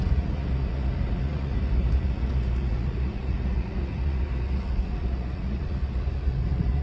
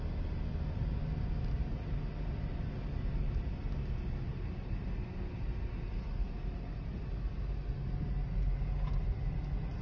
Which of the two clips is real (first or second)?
second